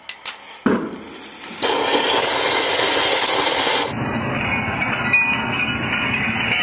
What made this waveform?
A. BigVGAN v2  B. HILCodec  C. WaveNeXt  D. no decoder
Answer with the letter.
D